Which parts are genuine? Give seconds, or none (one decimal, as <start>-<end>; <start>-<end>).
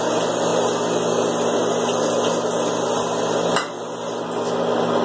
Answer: 0.0-5.0